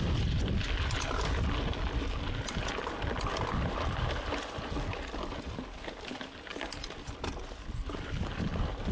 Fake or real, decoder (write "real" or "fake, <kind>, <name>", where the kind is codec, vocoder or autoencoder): real